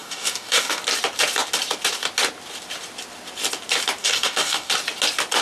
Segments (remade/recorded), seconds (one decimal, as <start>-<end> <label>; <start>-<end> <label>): 0.0-0.8 remade; 0.8-4.0 recorded; 4.0-4.7 remade; 4.7-5.4 recorded